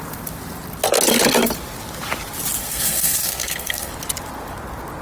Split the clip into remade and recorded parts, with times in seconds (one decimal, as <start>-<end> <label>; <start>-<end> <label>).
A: 0.0-2.6 recorded; 2.6-3.9 remade; 3.9-5.0 recorded